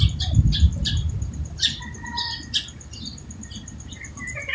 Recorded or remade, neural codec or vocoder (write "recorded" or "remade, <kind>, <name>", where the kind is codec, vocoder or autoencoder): remade, vocoder, BigVGAN v2